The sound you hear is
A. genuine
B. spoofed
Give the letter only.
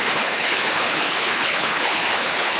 B